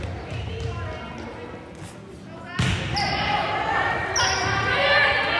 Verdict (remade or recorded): recorded